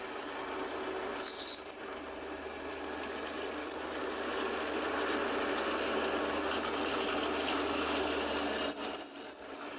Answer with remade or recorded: recorded